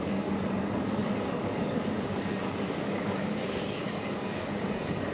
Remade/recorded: remade